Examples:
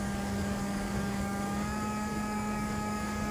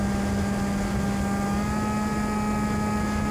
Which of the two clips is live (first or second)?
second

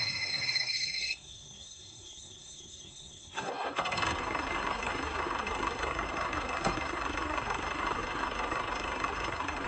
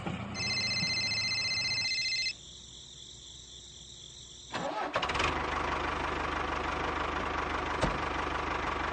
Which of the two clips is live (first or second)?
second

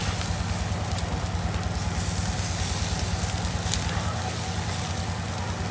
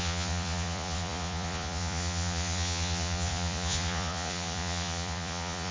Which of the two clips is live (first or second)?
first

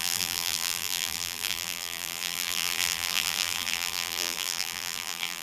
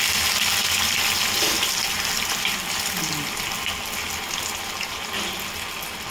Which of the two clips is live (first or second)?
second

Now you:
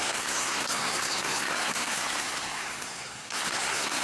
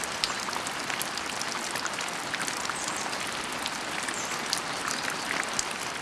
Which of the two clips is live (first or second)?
second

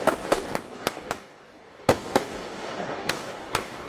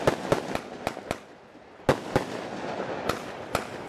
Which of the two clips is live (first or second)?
second